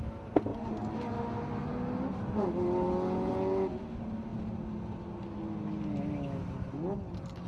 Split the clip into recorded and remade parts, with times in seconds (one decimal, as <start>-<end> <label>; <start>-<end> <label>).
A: 0.0-7.5 recorded